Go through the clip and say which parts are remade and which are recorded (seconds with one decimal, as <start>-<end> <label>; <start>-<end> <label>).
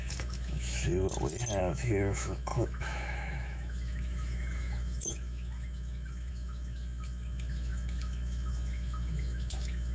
0.0-0.9 remade; 0.9-1.6 recorded; 1.6-9.9 remade